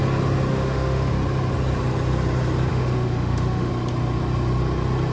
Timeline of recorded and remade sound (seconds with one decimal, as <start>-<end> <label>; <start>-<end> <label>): 0.0-0.5 recorded; 0.5-1.1 remade; 1.1-2.7 recorded; 2.7-3.7 remade; 3.7-5.1 recorded